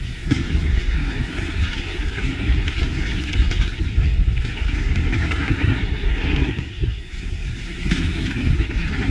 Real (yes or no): no